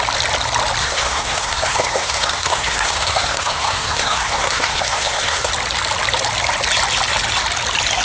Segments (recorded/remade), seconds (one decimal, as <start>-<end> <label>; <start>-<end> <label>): 0.0-0.8 recorded; 0.8-5.5 remade; 5.5-8.0 recorded